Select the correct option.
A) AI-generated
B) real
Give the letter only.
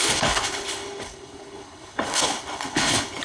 A